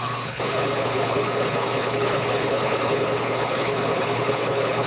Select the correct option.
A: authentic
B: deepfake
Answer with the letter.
B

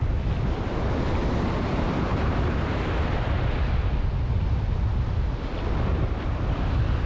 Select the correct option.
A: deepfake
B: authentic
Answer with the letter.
B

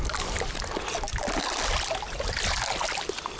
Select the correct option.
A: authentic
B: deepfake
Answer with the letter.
A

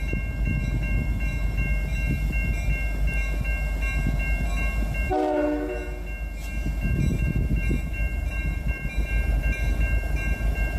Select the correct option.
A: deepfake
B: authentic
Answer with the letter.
B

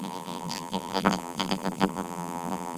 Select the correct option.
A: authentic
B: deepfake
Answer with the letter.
B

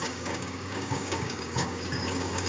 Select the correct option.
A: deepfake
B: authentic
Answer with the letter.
A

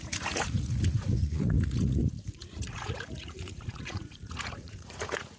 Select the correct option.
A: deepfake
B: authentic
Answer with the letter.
A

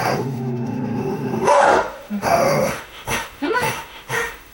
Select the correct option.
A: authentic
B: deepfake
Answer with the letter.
B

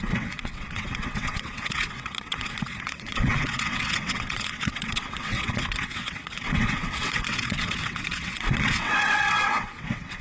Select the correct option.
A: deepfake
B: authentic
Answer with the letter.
A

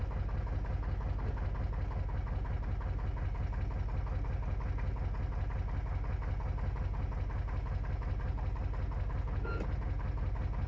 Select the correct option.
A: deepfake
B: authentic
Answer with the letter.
B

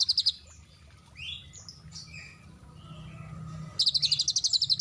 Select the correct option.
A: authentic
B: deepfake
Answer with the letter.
A